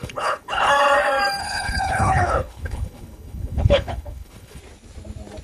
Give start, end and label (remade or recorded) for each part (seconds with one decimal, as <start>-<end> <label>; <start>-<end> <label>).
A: 0.0-0.7 remade; 0.7-1.4 recorded; 1.4-4.6 remade; 4.6-5.4 recorded